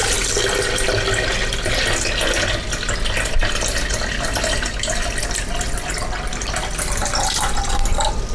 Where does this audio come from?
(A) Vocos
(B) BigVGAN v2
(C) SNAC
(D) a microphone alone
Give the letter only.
D